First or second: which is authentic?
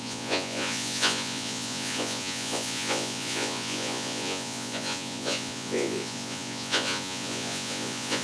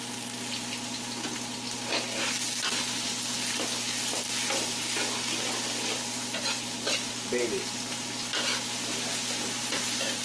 second